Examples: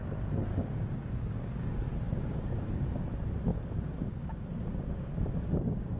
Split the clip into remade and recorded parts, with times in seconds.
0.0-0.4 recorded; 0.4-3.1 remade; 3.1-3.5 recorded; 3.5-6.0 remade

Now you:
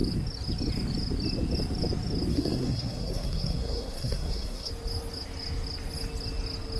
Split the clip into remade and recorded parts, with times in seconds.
0.0-2.3 recorded; 2.3-4.7 remade; 4.7-6.8 recorded

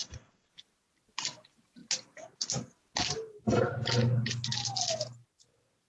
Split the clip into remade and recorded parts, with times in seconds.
0.0-0.5 remade; 0.5-5.9 recorded